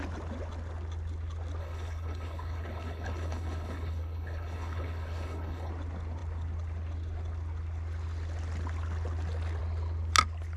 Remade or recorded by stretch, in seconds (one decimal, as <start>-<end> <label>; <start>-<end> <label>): 0.0-1.6 recorded; 1.6-5.7 remade; 5.7-10.6 recorded